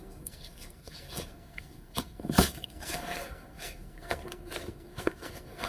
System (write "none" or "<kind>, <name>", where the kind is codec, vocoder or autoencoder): codec, SNAC